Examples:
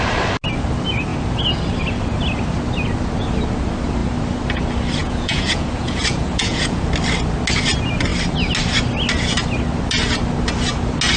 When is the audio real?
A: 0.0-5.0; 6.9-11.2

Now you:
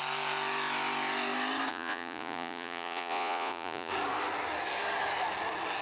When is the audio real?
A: 0.0-1.7; 3.9-5.8

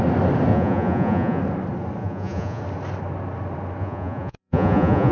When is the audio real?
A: 0.0-0.5; 1.4-2.0; 2.6-3.8

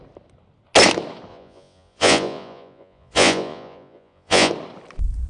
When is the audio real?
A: 0.0-1.3; 4.5-5.3

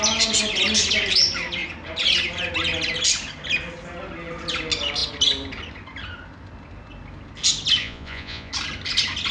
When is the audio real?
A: 0.0-7.8; 8.5-9.3

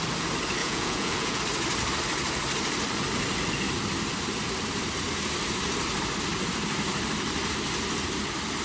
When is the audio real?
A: 0.0-0.6; 1.4-8.6